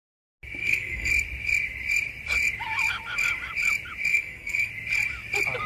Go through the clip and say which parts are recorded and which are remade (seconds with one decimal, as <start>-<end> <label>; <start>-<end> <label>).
0.0-0.6 recorded; 0.6-1.1 remade; 1.1-4.1 recorded; 4.1-4.7 remade; 4.7-5.7 recorded